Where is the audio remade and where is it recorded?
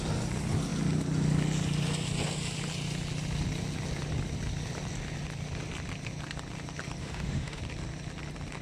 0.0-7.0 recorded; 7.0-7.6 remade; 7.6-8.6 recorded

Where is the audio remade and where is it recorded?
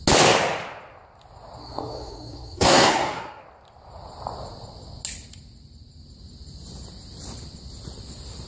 0.0-1.6 recorded; 1.6-3.4 remade; 3.4-8.5 recorded